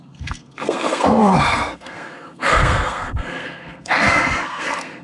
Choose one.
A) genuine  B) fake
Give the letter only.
B